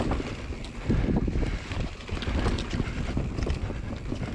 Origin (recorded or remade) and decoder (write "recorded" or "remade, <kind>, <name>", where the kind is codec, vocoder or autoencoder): recorded